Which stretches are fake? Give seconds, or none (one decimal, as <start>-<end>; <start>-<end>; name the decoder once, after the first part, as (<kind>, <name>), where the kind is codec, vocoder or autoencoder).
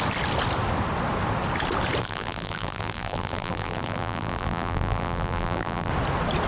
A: 2.0-5.9 (vocoder, BigVGAN v2)